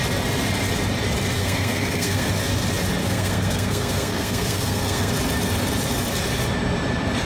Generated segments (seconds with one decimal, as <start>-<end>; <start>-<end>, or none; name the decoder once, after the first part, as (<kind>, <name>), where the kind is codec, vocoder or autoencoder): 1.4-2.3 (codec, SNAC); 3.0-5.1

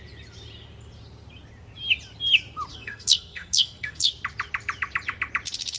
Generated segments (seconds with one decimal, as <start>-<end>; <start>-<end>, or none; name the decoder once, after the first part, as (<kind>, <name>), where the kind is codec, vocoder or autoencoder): 2.7-4.1 (codec, SNAC)

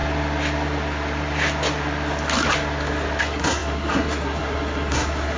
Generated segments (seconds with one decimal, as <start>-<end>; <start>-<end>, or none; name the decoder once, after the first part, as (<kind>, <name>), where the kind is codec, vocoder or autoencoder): 3.2-5.4 (codec, SNAC)

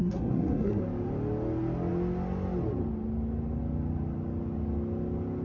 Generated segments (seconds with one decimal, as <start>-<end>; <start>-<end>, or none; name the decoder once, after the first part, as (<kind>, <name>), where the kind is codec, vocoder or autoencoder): 0.0-0.8 (codec, SNAC)